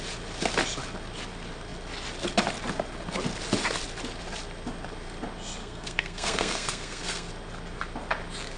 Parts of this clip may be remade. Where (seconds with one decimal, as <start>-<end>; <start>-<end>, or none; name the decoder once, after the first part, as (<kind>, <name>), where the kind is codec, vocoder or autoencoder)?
5.6-7.3 (codec, SNAC)